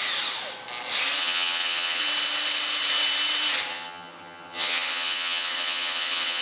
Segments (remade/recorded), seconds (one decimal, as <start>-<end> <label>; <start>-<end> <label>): 0.0-1.2 recorded; 1.2-2.0 remade; 2.0-3.7 recorded; 3.7-6.4 remade